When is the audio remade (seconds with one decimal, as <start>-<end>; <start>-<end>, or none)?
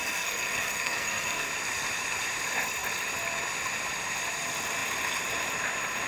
0.0-1.5